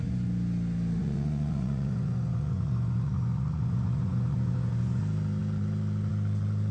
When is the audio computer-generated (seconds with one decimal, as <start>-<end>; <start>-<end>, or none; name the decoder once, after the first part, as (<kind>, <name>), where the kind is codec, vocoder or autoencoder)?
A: 1.0-5.0 (vocoder, Vocos)